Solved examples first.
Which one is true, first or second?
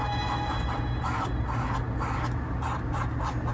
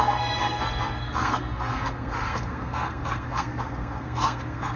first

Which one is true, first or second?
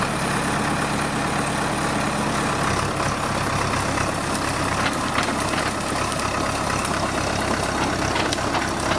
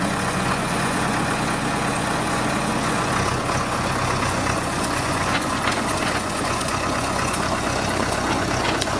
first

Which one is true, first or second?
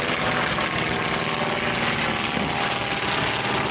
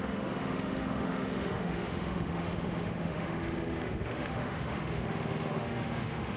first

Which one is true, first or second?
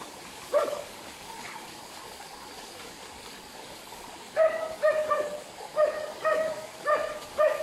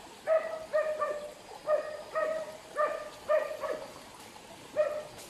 second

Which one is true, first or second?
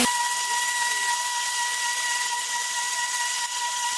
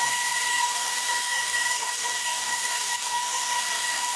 first